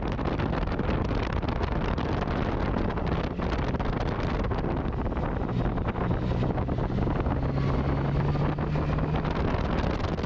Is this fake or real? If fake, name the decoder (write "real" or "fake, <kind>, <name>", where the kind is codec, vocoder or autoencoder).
real